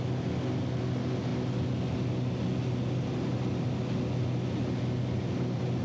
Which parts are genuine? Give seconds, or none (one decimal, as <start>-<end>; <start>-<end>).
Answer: 0.0-5.8